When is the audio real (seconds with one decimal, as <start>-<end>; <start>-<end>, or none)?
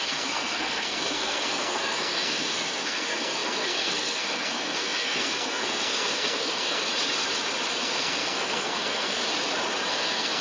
6.9-7.7; 9.2-9.9